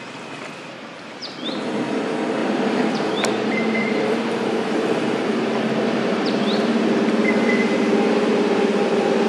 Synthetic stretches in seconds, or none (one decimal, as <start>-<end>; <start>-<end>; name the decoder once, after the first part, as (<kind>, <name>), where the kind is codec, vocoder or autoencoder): 2.4-6.8 (vocoder, BigVGAN v2)